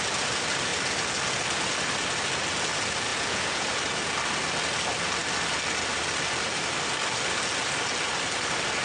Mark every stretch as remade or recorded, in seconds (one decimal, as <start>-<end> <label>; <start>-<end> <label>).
0.0-3.1 recorded; 3.1-3.7 remade; 3.7-8.8 recorded